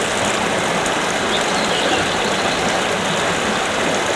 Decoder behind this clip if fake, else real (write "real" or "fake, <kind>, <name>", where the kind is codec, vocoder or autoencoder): real